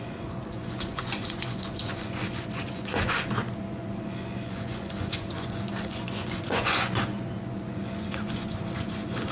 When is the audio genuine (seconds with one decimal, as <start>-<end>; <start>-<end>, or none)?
none